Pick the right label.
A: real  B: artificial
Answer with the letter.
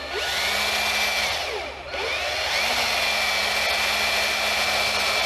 A